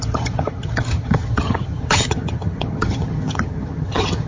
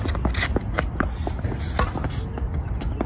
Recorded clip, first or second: second